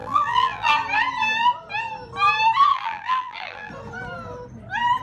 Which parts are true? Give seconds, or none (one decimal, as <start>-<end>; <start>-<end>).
0.7-2.7; 3.7-5.0